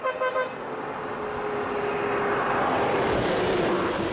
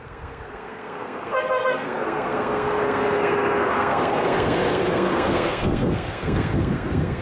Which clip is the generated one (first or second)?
second